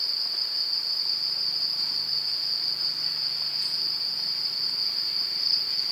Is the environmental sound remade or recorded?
recorded